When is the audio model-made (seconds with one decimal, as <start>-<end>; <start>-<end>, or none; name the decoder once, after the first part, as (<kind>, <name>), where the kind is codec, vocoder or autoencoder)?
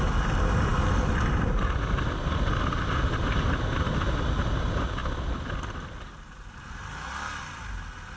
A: none